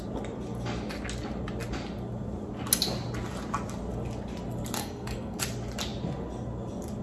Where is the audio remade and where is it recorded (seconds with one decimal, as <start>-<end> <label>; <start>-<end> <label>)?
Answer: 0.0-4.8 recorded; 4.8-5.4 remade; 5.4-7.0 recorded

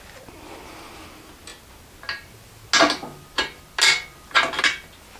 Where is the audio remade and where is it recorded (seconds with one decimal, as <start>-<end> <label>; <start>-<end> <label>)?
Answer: 0.0-5.2 recorded

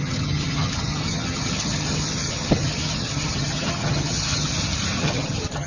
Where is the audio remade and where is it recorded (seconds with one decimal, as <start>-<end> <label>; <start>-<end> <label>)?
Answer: 0.0-4.5 remade; 4.5-5.0 recorded; 5.0-5.7 remade

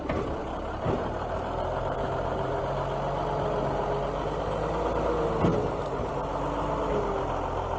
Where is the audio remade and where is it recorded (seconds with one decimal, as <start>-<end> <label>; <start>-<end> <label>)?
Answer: 0.0-0.4 recorded; 0.4-2.6 remade; 2.6-5.5 recorded; 5.5-6.1 remade; 6.1-7.8 recorded

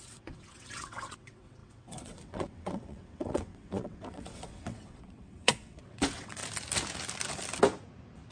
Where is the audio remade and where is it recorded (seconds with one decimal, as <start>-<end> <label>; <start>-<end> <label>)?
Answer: 0.0-6.4 remade; 6.4-8.3 recorded

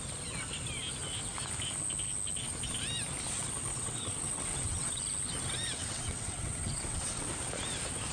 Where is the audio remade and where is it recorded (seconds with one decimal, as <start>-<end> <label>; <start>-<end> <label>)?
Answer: 0.0-3.7 recorded; 3.7-5.0 remade; 5.0-5.7 recorded; 5.7-7.3 remade; 7.3-8.1 recorded

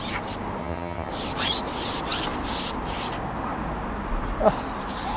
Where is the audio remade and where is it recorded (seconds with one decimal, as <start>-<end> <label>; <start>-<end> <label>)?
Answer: 0.0-0.6 recorded; 0.6-1.1 remade; 1.1-5.2 recorded

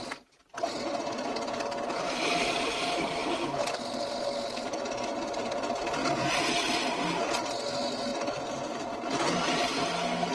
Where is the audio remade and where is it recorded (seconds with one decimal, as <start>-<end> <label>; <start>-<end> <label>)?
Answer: 0.0-8.1 recorded; 8.1-8.9 remade; 8.9-10.3 recorded